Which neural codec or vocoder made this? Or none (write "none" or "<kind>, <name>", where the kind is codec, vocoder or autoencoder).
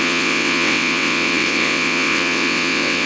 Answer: vocoder, WaveNeXt